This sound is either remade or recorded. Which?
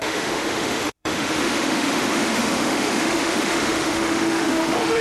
remade